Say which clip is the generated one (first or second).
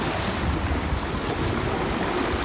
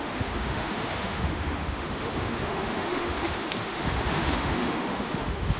second